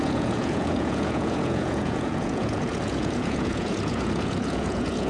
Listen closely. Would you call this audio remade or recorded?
remade